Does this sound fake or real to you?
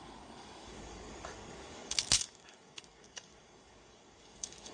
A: fake